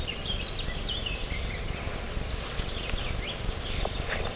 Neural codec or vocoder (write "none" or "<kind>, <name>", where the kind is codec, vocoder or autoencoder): none